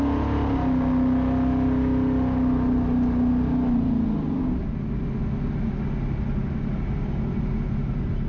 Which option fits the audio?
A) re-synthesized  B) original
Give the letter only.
B